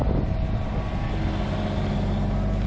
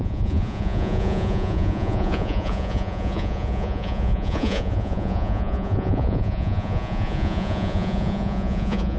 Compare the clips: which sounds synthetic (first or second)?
second